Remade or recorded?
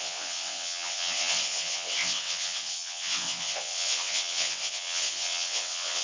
remade